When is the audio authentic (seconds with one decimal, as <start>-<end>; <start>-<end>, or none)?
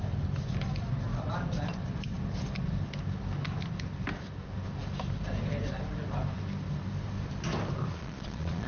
0.0-7.9